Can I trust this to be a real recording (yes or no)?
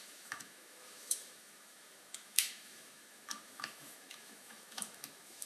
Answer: no